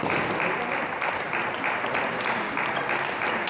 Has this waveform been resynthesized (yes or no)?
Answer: no